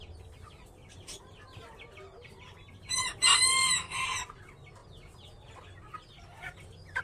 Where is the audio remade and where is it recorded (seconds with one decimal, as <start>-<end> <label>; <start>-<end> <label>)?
0.0-7.0 recorded